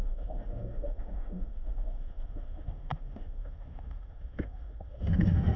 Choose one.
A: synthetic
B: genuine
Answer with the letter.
A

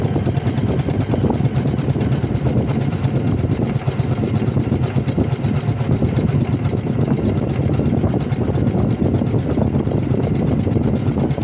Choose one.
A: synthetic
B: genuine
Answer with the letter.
B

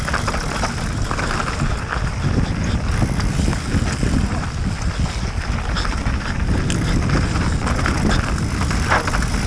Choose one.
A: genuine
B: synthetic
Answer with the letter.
A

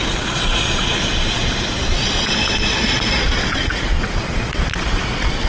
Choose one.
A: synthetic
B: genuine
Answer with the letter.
A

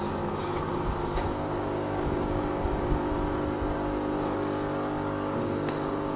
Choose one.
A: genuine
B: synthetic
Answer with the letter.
B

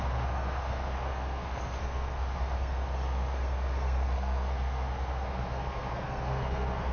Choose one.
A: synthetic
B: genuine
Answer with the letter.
A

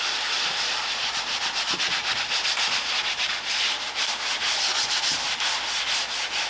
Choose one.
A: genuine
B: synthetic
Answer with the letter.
A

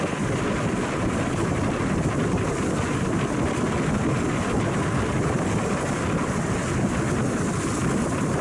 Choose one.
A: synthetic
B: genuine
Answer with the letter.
B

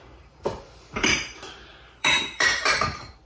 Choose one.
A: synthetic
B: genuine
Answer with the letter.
A